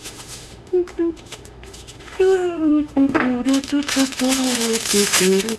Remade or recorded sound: remade